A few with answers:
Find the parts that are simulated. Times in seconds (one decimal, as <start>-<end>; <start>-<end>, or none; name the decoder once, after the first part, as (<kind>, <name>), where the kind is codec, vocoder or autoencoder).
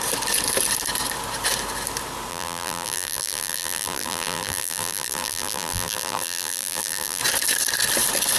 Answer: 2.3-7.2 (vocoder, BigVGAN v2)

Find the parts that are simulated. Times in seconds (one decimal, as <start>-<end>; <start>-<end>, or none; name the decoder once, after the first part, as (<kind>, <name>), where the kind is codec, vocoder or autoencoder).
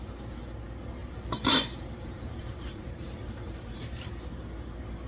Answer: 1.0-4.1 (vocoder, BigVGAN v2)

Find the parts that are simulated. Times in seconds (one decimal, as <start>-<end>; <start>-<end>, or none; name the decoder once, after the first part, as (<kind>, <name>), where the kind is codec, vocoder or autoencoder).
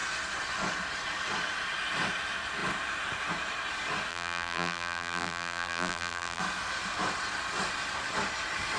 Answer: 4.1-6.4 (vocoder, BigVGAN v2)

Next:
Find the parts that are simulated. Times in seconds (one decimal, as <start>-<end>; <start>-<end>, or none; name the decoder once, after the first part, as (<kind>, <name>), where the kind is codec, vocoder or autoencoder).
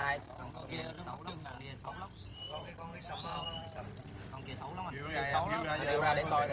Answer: 2.9-4.6 (vocoder, BigVGAN v2); 5.3-6.0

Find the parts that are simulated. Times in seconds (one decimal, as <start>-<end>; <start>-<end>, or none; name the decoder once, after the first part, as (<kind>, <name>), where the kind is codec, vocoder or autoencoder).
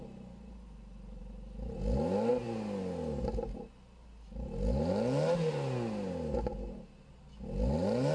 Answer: none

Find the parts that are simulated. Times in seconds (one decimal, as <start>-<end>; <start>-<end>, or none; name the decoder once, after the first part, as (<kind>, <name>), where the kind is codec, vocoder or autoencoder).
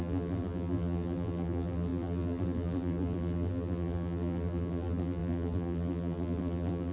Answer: 0.0-6.9 (vocoder, BigVGAN v2)